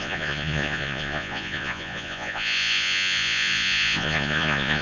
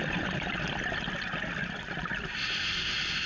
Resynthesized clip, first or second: first